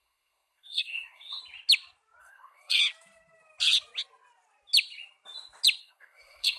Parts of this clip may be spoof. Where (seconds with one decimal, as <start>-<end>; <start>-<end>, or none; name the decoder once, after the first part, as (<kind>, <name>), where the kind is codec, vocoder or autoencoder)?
0.0-1.4 (codec, SNAC); 2.2-2.8; 5.8-6.6